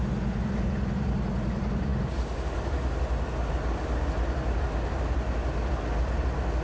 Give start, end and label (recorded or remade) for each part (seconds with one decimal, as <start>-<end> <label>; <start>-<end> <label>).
0.0-6.6 recorded